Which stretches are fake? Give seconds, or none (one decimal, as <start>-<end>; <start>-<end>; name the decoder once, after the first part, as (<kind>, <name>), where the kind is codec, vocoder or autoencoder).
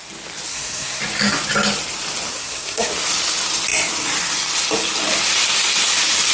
0.5-1.0 (codec, SNAC); 2.3-2.9